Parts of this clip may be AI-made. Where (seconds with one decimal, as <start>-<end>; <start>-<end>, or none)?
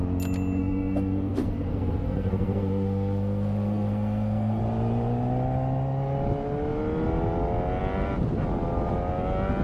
0.6-4.6